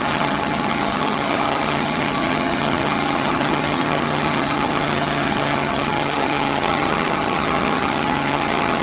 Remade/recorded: remade